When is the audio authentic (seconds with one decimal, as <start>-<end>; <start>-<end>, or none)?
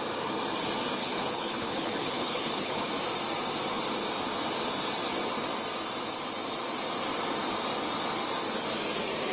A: 0.0-1.0; 2.9-9.3